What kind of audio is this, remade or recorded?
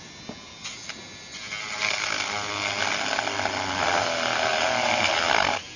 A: recorded